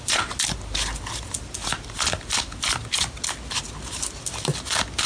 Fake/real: real